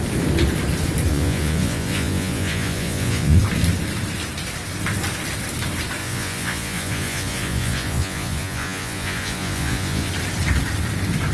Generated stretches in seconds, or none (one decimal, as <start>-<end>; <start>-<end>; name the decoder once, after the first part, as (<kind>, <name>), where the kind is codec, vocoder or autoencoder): 1.1-3.4 (vocoder, Vocos); 6.0-10.1